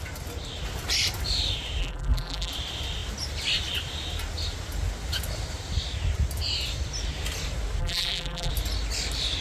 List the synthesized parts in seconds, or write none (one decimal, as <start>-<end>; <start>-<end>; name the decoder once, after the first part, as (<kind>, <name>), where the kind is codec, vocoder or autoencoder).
1.8-2.5 (vocoder, BigVGAN v2); 7.8-8.5